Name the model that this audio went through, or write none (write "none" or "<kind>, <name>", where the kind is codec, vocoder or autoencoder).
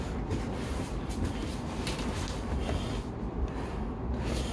none